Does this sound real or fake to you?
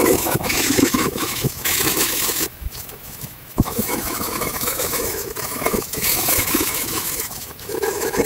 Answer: fake